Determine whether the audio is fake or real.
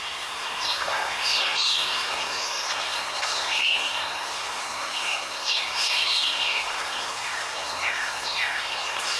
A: fake